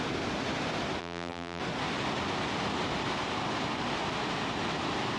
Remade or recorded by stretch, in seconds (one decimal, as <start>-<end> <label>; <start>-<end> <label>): 0.0-1.0 recorded; 1.0-1.6 remade; 1.6-5.2 recorded